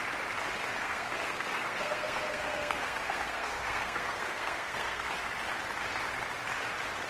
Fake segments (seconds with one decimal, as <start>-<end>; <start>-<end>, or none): 0.8-5.1